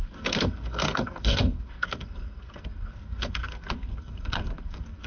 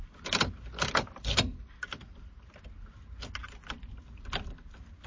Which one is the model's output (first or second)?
first